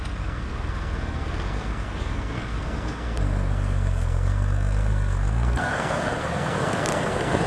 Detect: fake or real fake